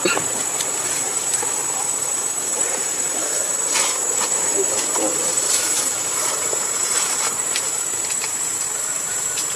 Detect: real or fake fake